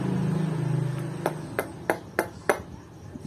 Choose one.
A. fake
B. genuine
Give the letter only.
B